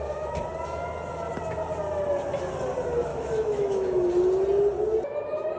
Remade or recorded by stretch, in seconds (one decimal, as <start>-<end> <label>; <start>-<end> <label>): 0.0-3.1 recorded; 3.1-4.1 remade; 4.1-5.6 recorded